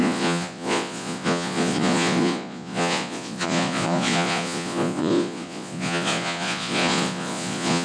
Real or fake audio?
fake